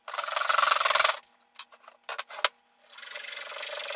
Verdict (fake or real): real